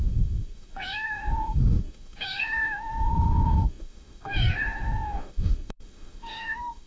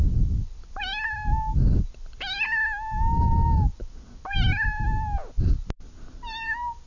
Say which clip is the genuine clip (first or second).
second